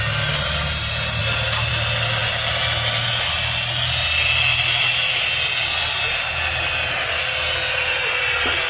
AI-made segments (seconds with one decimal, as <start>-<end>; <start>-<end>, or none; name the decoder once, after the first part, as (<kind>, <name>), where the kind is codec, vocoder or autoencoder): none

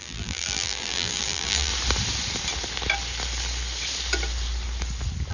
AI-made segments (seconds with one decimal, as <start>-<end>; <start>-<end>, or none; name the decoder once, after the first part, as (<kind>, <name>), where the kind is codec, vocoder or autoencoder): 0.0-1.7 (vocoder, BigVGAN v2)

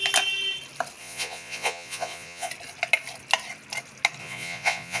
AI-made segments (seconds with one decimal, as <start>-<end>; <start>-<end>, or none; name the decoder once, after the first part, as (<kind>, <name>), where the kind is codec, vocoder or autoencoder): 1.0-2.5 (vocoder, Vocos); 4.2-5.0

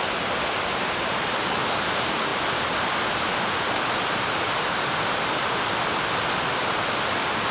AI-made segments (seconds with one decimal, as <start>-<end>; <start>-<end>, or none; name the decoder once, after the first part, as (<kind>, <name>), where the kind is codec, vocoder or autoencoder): none

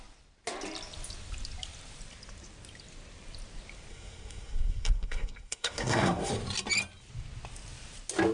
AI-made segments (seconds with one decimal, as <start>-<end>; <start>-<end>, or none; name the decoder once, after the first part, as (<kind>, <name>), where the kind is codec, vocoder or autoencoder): 3.9-6.3 (codec, SNAC)

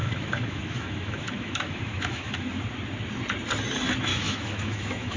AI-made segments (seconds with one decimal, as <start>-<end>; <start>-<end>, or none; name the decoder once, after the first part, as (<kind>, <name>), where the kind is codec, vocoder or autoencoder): 0.0-2.6 (autoencoder, DAC-VAE); 4.1-5.2